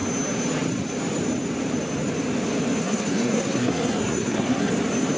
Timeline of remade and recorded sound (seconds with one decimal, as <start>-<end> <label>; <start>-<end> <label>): 0.0-2.8 recorded; 2.8-4.7 remade; 4.7-5.2 recorded